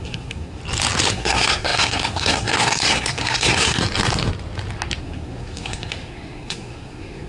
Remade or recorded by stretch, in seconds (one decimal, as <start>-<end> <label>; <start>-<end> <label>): 0.0-0.6 remade; 0.6-1.1 recorded; 1.1-3.8 remade; 3.8-5.0 recorded; 5.0-7.3 remade